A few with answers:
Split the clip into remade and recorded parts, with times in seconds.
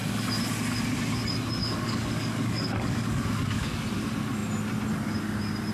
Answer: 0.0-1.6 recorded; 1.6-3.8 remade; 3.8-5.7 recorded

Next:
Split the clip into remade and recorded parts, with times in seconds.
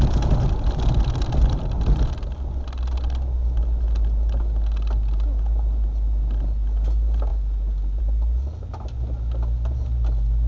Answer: 0.0-10.5 recorded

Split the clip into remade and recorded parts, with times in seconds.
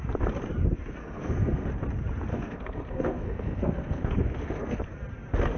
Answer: 0.0-1.0 recorded; 1.0-1.7 remade; 1.7-2.3 recorded; 2.3-4.8 remade; 4.8-5.6 recorded